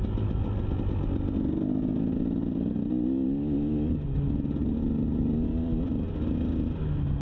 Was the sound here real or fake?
real